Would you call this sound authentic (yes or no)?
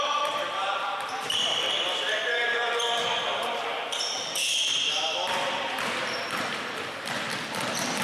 no